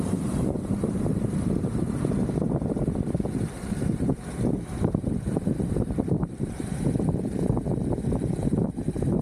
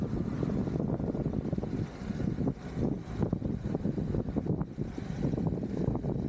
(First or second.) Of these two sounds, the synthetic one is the first